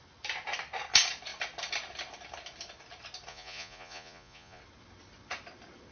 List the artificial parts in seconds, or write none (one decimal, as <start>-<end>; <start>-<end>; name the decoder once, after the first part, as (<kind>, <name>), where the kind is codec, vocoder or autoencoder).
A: 3.3-4.6 (vocoder, Vocos)